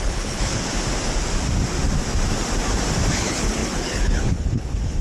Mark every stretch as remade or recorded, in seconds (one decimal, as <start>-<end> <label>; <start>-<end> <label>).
0.0-0.7 remade; 0.7-3.1 recorded; 3.1-5.0 remade